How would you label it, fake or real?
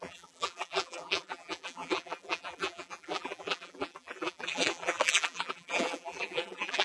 fake